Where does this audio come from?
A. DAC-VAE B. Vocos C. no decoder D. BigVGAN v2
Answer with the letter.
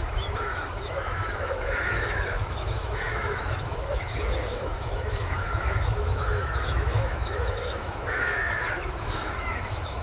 A